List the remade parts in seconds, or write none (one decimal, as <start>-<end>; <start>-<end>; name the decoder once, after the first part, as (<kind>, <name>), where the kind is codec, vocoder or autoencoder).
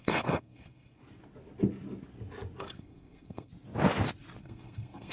0.0-1.0 (codec, SNAC); 2.6-3.5; 4.4-5.1